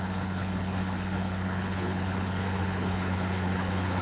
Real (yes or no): no